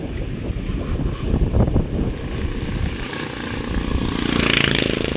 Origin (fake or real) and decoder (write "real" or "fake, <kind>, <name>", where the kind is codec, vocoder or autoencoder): real